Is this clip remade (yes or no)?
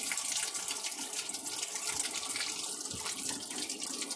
no